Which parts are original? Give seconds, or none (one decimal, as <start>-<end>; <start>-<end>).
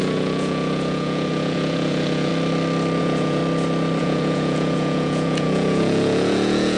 2.3-3.0; 3.4-4.0